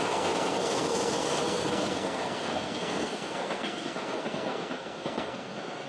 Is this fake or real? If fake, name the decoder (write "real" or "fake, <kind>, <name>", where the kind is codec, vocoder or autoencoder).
fake, codec, SNAC